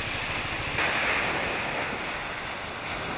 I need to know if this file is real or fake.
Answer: real